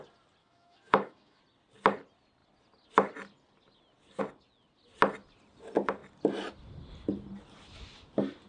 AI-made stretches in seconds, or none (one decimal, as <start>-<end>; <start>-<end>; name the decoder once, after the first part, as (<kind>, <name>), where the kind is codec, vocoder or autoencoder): 0.4-1.4 (autoencoder, DAC-VAE)